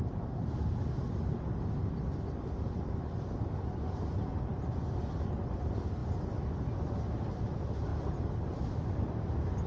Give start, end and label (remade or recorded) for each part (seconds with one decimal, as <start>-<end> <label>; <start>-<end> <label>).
0.0-9.7 recorded